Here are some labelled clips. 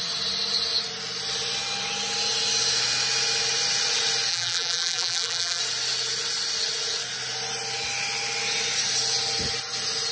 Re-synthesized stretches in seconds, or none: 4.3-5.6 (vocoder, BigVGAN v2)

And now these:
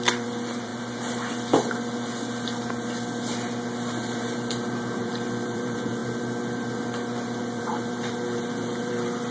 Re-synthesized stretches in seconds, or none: 0.0-0.7 (vocoder, BigVGAN v2); 5.0-6.0; 7.4-9.3

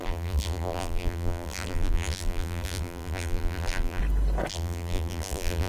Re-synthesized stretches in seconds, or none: 0.0-4.0 (vocoder, BigVGAN v2); 4.5-5.7

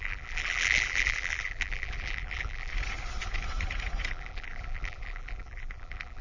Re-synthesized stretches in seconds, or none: 0.0-2.7 (vocoder, BigVGAN v2); 4.1-6.2

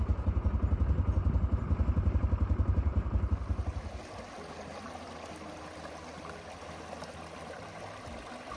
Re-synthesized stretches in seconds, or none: none